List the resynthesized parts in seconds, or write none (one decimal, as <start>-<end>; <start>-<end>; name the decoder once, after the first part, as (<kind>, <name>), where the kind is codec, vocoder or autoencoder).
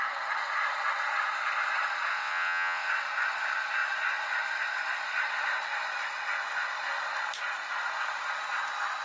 2.1-2.9 (vocoder, WaveNeXt)